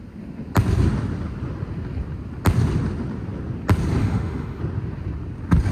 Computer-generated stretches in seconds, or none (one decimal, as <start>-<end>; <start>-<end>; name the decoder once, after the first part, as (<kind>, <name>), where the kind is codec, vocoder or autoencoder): 4.0-4.6 (autoencoder, DAC-VAE)